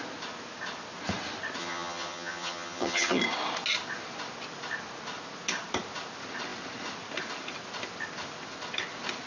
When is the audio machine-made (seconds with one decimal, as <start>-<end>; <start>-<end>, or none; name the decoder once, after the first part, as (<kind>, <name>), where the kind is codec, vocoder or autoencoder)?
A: 1.6-3.2 (vocoder, HiFi-GAN)